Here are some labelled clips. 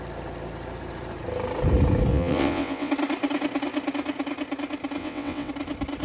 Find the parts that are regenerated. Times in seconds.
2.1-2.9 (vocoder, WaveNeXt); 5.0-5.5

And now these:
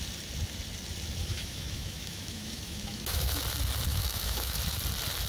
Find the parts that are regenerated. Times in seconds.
1.2-3.4 (autoencoder, DAC-VAE); 3.9-4.6